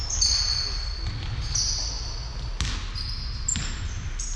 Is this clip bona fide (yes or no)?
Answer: yes